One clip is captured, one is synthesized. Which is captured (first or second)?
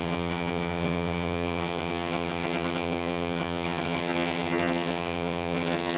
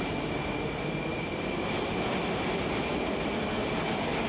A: second